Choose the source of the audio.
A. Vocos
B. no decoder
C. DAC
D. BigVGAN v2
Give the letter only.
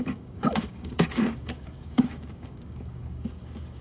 C